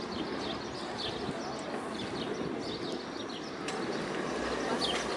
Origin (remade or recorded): recorded